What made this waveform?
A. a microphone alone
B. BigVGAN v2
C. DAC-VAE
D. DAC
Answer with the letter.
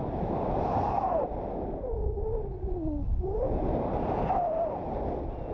A